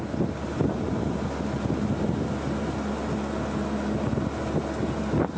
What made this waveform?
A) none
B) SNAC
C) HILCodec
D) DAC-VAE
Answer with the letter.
A